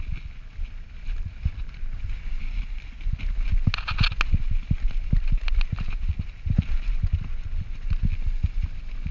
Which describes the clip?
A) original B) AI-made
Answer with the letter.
A